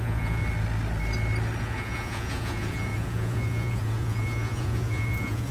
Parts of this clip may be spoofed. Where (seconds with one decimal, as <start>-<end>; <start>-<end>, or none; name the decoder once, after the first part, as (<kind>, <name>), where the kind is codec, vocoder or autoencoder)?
0.0-0.4 (vocoder, Vocos); 1.6-5.5